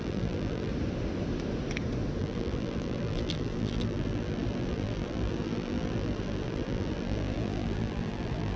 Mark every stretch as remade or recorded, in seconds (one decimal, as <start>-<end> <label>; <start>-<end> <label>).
0.0-0.7 remade; 0.7-2.2 recorded; 2.2-8.6 remade